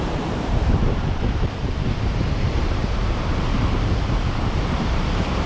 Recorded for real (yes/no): no